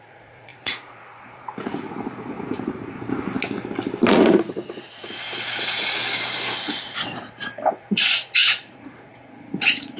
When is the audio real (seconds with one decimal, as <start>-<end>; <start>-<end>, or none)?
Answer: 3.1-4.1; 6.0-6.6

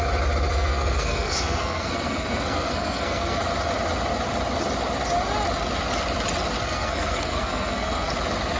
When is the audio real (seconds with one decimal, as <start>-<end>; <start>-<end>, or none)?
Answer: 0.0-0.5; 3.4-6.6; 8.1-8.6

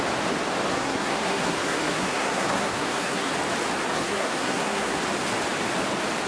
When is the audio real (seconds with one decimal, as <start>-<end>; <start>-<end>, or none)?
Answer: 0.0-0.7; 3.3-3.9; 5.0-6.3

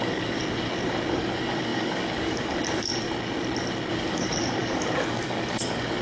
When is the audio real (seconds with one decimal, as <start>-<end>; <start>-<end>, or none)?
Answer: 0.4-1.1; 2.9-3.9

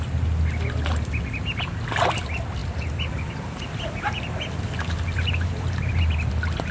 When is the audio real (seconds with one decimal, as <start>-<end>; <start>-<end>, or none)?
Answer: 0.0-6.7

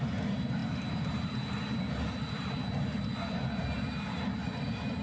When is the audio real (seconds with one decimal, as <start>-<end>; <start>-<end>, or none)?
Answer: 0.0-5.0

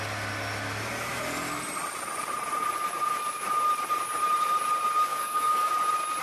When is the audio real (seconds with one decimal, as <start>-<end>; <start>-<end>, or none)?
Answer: 0.0-5.1; 5.7-6.2